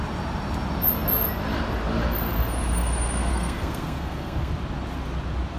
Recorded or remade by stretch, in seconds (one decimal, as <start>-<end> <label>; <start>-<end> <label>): 0.0-3.3 recorded; 3.3-4.5 remade; 4.5-5.6 recorded

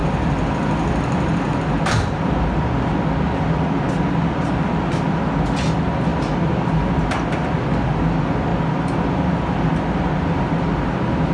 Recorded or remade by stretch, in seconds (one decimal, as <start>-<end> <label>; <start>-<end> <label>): 0.0-11.3 recorded

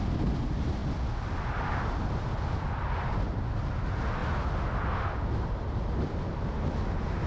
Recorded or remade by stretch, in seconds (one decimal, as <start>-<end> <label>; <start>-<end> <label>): 0.0-7.3 recorded

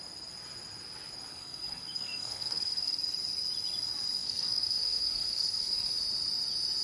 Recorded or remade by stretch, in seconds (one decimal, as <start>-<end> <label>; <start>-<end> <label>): 0.0-1.3 recorded; 1.3-3.0 remade; 3.0-4.2 recorded; 4.2-6.0 remade; 6.0-6.8 recorded

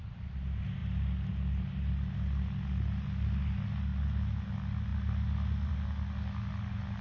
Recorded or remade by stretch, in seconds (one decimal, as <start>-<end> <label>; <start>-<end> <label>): 0.0-7.0 recorded

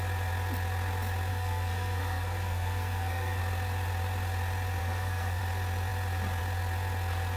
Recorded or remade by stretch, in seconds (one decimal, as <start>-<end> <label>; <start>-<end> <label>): 0.0-1.3 recorded; 1.3-3.4 remade; 3.4-4.8 recorded; 4.8-5.4 remade; 5.4-7.4 recorded